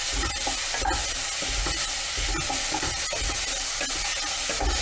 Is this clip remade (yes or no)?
no